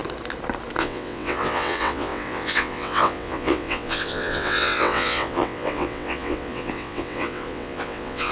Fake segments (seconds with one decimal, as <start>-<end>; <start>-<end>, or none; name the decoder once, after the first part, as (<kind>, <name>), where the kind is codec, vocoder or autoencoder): 0.8-8.3 (vocoder, WaveNeXt)